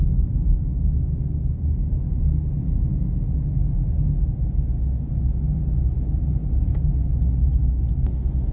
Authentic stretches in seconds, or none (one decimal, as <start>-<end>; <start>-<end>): 0.0-8.5